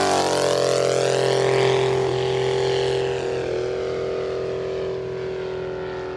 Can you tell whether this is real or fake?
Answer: real